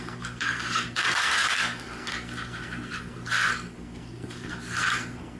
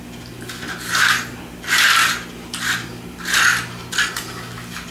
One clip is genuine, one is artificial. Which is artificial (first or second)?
first